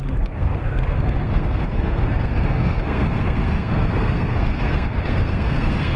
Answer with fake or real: fake